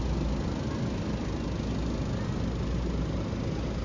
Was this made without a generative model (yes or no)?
yes